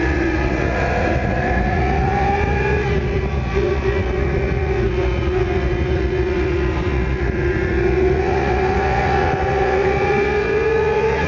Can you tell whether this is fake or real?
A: fake